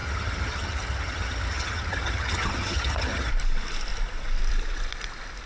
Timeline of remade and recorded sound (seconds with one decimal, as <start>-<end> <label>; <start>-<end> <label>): 0.0-3.3 remade; 3.3-5.5 recorded